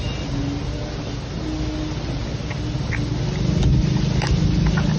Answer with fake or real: real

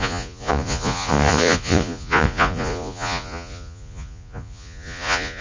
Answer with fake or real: fake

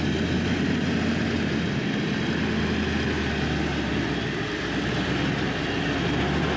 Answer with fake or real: real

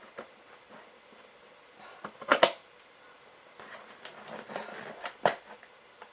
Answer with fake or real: fake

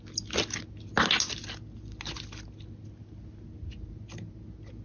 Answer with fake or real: real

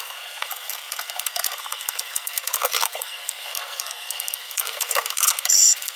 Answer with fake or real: fake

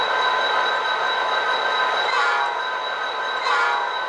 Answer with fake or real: real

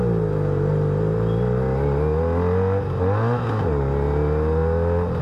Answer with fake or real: real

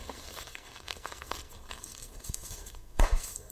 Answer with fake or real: fake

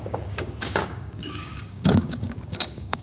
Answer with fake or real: fake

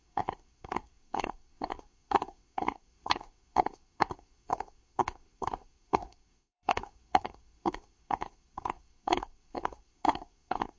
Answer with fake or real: fake